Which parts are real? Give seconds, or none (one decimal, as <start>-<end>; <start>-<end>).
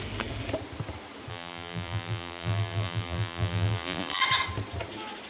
0.0-1.3; 4.2-5.3